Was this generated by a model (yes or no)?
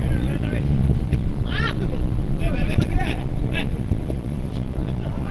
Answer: yes